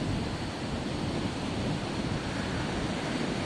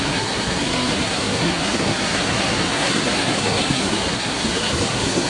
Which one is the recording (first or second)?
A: first